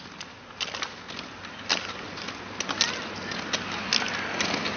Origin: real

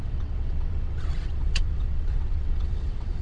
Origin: fake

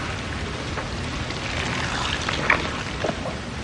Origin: real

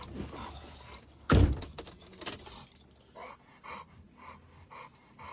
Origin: real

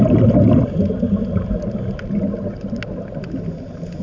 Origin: real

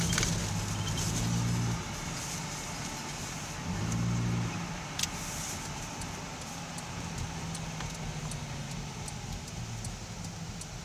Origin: real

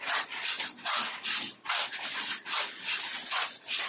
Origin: fake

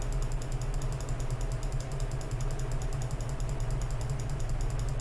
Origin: real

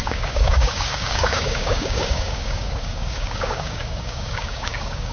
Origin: fake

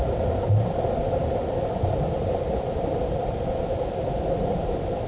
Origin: real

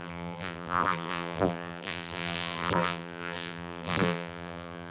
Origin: fake